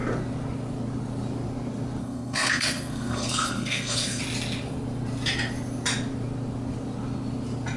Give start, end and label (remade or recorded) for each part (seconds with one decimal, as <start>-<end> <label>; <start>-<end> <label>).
0.0-2.0 recorded; 2.0-4.2 remade; 4.2-7.8 recorded